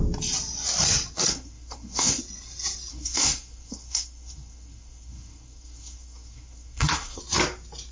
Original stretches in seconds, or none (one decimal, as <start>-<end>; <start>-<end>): 0.0-1.3; 2.2-2.9; 7.2-7.9